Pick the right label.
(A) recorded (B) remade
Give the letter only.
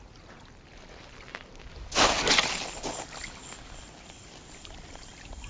A